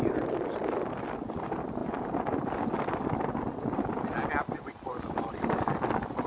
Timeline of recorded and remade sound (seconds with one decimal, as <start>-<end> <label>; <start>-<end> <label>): 0.0-6.3 recorded